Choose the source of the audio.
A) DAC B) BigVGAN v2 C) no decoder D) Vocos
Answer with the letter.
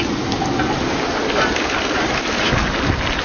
C